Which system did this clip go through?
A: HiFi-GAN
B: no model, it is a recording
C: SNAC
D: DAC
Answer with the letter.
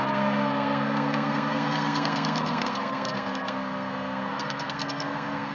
C